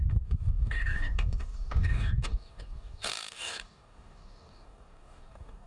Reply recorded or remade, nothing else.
remade